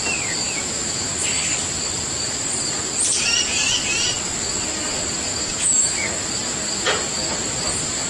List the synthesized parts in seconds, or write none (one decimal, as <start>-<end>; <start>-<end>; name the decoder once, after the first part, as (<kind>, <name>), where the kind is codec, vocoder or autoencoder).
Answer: 0.4-1.1 (autoencoder, DAC-VAE); 5.3-6.0